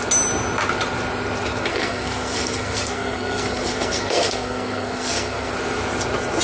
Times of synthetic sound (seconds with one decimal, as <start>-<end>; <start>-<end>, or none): 1.7-5.5